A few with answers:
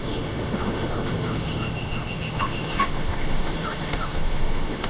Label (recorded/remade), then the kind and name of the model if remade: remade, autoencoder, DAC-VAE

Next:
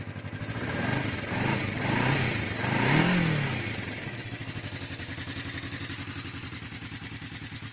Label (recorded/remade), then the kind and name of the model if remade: recorded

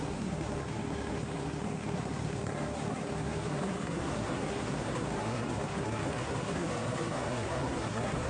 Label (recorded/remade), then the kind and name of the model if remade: remade, codec, SNAC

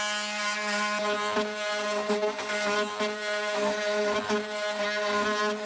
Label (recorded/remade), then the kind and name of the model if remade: recorded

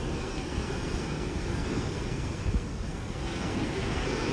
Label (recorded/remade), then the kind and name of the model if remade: remade, codec, SNAC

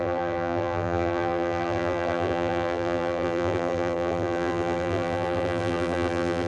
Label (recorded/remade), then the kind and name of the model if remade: remade, vocoder, BigVGAN v2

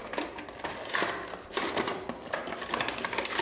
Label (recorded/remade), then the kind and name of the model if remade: recorded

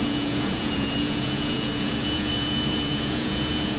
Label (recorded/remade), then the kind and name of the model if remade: remade, vocoder, Vocos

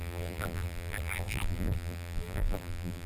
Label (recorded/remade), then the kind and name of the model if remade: remade, vocoder, BigVGAN v2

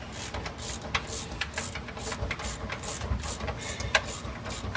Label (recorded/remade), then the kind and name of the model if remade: recorded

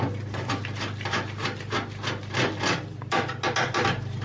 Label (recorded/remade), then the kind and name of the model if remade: recorded